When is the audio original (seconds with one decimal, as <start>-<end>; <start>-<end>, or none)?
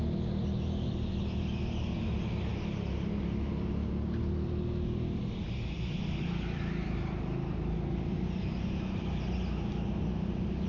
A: 0.0-10.7